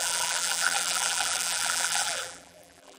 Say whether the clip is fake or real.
fake